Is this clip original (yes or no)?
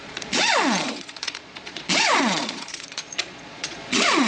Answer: no